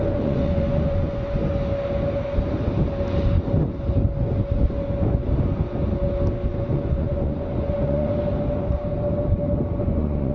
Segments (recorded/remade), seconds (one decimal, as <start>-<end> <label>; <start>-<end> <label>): 0.0-1.4 remade; 1.4-6.5 recorded; 6.5-8.1 remade; 8.1-9.8 recorded; 9.8-10.3 remade

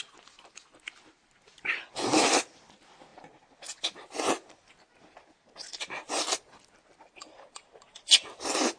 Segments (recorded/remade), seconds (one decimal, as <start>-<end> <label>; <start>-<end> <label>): 0.0-8.8 recorded

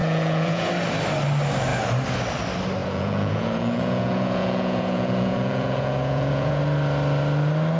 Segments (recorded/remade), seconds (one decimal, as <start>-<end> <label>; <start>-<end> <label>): 0.0-0.7 remade; 0.7-2.8 recorded; 2.8-6.6 remade; 6.6-7.8 recorded